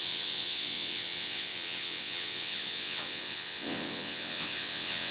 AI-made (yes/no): yes